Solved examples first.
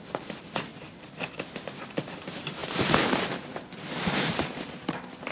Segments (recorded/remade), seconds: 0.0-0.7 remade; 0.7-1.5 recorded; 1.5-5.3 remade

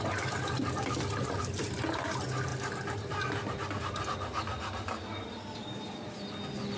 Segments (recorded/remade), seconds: 0.0-6.8 recorded

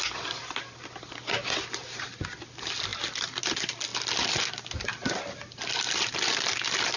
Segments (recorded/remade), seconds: 0.0-7.0 recorded

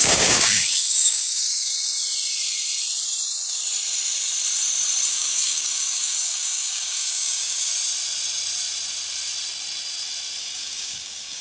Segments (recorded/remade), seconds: 0.0-1.7 remade; 1.7-5.1 recorded; 5.1-7.7 remade; 7.7-10.4 recorded; 10.4-11.4 remade

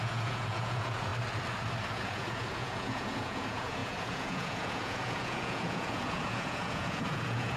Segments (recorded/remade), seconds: 0.0-1.1 remade; 1.1-1.9 recorded; 1.9-7.6 remade

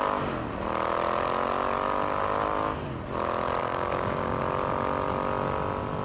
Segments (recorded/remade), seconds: 0.0-3.6 recorded; 3.6-4.4 remade; 4.4-6.0 recorded

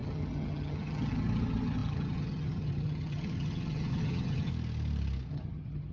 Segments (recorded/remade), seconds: 0.0-4.5 remade; 4.5-5.3 recorded; 5.3-5.9 remade

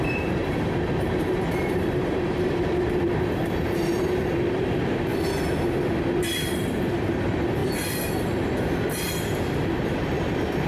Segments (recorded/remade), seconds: 0.0-5.1 remade; 5.1-5.7 recorded; 5.7-7.6 remade; 7.6-9.1 recorded; 9.1-10.7 remade